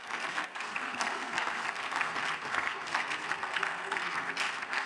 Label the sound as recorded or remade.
remade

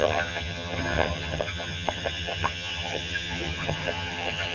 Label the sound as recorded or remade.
remade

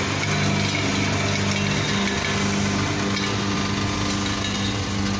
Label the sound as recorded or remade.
recorded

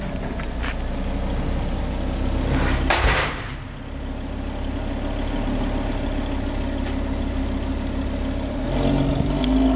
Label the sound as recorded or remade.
recorded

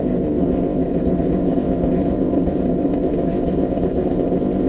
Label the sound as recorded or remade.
remade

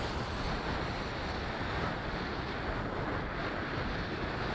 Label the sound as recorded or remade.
recorded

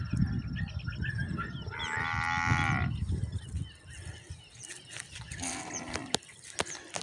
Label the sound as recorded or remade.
recorded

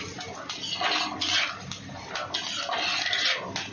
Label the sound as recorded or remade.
recorded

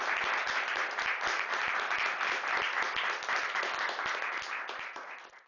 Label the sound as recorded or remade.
recorded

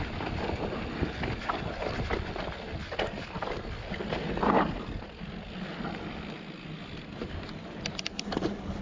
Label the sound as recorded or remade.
recorded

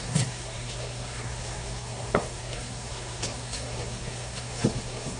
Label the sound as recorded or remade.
remade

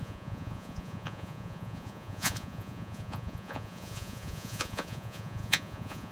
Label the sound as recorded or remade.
remade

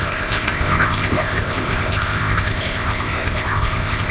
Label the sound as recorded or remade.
remade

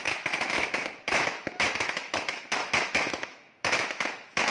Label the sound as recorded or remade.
remade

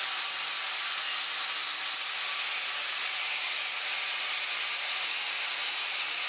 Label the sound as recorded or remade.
recorded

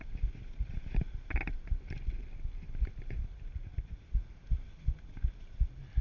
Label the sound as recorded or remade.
recorded